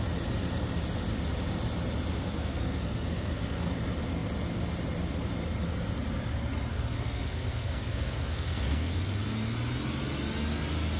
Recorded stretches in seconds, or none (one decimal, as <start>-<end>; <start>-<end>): 0.0-2.2; 3.7-6.7; 9.0-11.0